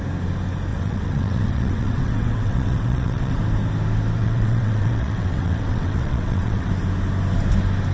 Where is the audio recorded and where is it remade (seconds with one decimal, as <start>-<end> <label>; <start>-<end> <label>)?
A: 0.0-0.7 recorded; 0.7-3.4 remade; 3.4-4.2 recorded; 4.2-6.7 remade; 6.7-7.9 recorded